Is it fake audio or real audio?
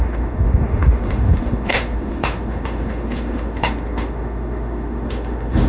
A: fake